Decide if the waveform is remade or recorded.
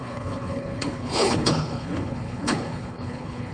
remade